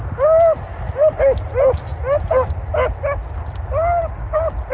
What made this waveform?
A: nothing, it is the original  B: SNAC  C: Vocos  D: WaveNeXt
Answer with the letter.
A